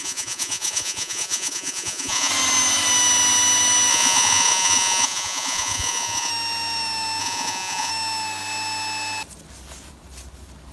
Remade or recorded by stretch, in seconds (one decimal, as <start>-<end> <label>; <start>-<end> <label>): 0.0-2.3 remade; 2.3-3.9 recorded; 3.9-6.3 remade; 6.3-7.2 recorded; 7.2-7.9 remade; 7.9-10.7 recorded